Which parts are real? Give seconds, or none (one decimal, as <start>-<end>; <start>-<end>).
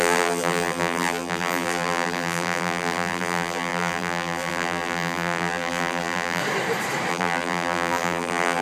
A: 6.4-7.1